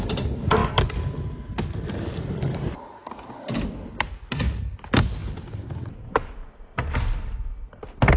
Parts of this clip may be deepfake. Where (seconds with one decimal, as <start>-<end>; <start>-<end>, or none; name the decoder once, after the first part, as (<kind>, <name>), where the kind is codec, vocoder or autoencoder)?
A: none

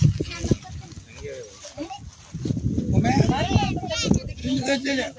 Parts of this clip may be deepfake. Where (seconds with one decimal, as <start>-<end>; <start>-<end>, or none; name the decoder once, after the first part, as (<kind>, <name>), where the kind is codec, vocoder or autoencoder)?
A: 4.4-5.2 (codec, DAC)

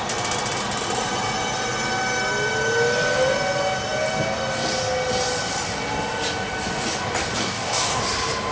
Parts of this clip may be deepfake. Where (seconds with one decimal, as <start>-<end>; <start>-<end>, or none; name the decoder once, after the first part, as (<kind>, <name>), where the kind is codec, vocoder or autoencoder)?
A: 7.4-8.0 (codec, DAC)

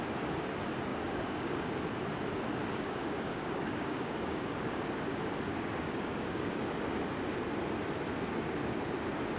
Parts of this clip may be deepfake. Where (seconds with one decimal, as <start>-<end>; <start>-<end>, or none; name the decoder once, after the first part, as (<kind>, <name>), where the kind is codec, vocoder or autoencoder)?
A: 0.9-1.8 (codec, DAC); 2.6-4.8; 5.5-6.5